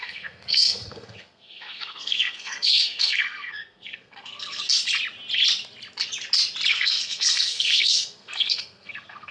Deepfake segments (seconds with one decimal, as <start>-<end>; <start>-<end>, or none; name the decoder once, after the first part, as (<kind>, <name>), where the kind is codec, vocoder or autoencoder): 0.0-4.6 (codec, SNAC); 6.7-9.3